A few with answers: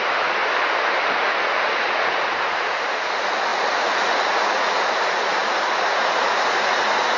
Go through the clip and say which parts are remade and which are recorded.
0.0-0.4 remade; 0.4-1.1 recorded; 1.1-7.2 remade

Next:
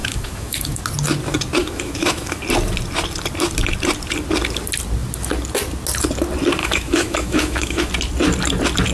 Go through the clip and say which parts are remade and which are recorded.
0.0-0.8 remade; 0.8-1.6 recorded; 1.6-2.4 remade; 2.4-6.6 recorded; 6.6-7.9 remade; 7.9-8.9 recorded

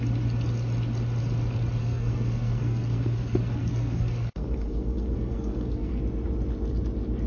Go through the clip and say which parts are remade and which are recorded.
0.0-1.8 recorded; 1.8-6.0 remade; 6.0-7.3 recorded

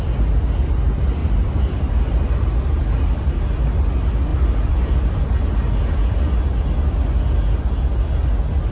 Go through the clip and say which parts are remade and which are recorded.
0.0-1.2 recorded; 1.2-1.8 remade; 1.8-4.3 recorded; 4.3-5.2 remade; 5.2-8.7 recorded

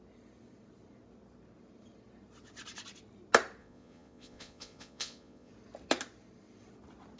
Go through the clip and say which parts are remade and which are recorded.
0.0-3.6 recorded; 3.6-5.5 remade; 5.5-7.2 recorded